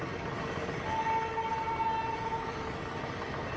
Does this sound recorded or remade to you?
recorded